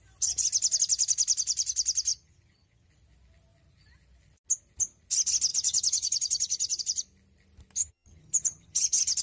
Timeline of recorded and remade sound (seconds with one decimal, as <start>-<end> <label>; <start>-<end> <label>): 0.0-2.1 recorded; 2.1-2.9 remade; 2.9-5.5 recorded; 5.5-6.8 remade; 6.8-7.8 recorded; 7.8-9.2 remade